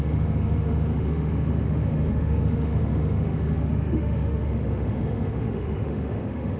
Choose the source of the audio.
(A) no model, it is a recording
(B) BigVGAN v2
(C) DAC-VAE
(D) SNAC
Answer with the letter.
C